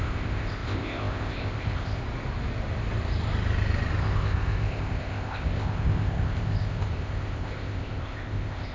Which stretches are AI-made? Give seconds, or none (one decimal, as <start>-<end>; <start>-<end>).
0.0-2.0; 4.0-8.7